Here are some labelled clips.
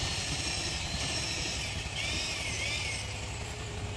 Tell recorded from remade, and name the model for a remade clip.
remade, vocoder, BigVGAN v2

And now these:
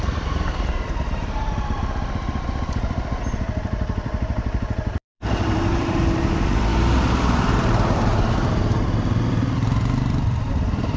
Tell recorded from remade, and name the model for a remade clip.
remade, vocoder, BigVGAN v2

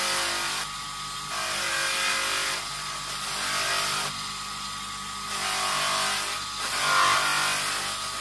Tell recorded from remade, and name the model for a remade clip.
recorded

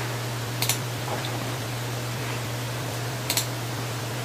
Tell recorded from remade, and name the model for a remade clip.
remade, vocoder, BigVGAN v2